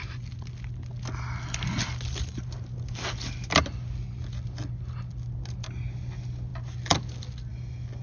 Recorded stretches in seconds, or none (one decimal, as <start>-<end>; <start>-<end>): 0.0-8.0

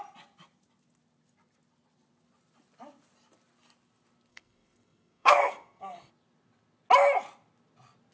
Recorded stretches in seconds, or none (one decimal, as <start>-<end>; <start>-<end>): 0.0-4.3; 6.1-8.1

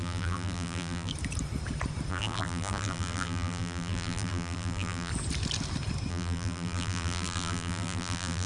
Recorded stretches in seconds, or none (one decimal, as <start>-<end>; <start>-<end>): 1.1-2.1; 5.1-6.1